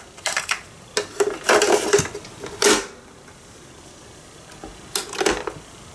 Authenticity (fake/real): real